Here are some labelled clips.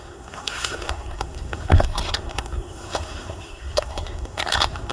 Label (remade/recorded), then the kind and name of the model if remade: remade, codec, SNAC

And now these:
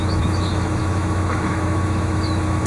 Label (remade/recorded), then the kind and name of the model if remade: remade, autoencoder, DAC-VAE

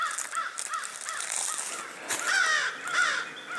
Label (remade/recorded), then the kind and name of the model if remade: recorded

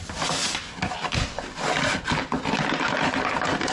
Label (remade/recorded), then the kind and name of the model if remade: recorded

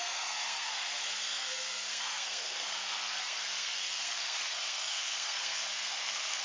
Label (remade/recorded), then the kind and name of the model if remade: remade, codec, SNAC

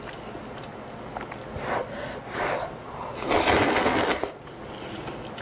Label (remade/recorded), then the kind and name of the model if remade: recorded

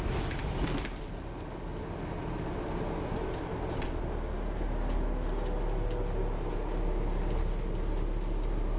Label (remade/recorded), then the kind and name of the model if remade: recorded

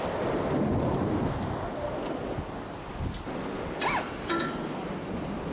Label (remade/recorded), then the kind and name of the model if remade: recorded